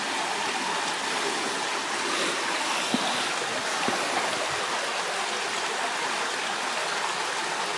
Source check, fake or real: real